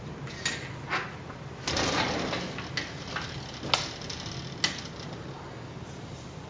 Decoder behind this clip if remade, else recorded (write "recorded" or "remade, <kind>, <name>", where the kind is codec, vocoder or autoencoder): recorded